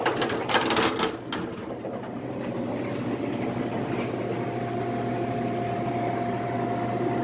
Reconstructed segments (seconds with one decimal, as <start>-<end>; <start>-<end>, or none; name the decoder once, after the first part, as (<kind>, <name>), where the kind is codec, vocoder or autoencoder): none